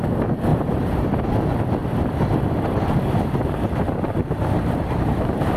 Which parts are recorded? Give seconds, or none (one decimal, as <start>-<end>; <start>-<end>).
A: 0.0-0.5; 1.3-1.8